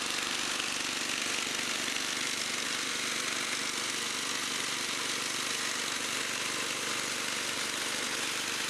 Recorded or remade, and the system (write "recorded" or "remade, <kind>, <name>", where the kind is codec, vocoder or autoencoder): recorded